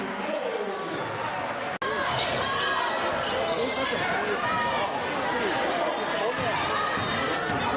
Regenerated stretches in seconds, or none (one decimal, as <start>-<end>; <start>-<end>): none